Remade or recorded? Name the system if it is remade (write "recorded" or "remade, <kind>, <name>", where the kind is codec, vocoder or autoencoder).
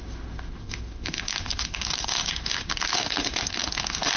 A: remade, autoencoder, DAC-VAE